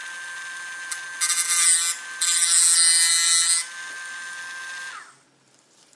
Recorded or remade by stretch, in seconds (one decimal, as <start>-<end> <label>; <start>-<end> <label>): 0.0-6.0 recorded

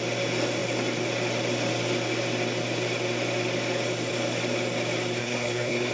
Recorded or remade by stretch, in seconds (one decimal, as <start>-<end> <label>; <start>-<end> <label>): 0.0-5.2 recorded; 5.2-5.9 remade

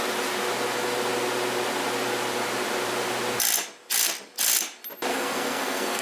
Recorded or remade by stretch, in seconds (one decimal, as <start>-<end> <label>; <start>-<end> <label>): 0.0-5.1 recorded; 5.1-6.0 remade

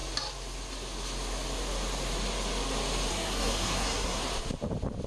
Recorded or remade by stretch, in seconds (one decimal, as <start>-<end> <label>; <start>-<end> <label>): 0.0-3.1 recorded; 3.1-4.2 remade; 4.2-5.1 recorded

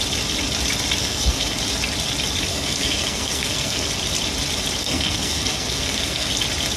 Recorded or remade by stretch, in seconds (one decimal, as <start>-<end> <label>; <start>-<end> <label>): 0.0-1.0 recorded; 1.0-1.6 remade; 1.6-2.5 recorded; 2.5-3.9 remade; 3.9-4.8 recorded; 4.8-6.3 remade; 6.3-6.8 recorded

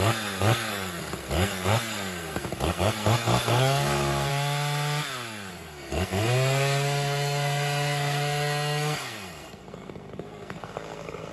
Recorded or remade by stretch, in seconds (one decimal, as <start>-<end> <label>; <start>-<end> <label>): 0.0-4.3 remade; 4.3-5.5 recorded; 5.5-11.3 remade

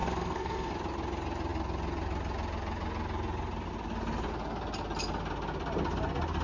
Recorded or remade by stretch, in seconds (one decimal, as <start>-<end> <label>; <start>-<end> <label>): 0.0-0.7 remade; 0.7-6.4 recorded